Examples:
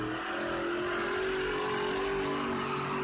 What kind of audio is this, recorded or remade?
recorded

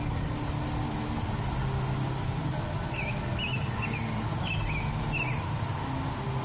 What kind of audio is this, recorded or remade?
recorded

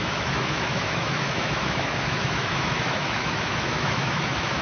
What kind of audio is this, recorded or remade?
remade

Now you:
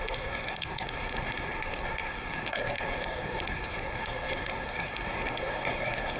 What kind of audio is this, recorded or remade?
remade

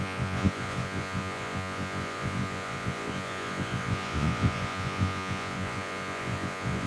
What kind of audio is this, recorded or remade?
remade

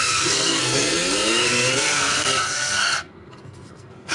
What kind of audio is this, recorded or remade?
remade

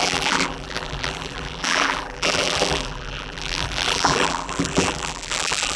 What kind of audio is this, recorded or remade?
remade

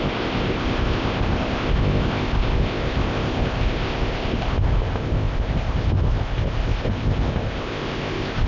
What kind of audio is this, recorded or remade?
remade